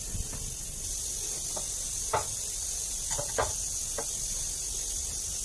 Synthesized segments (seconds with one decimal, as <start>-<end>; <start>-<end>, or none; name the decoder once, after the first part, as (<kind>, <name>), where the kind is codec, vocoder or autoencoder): none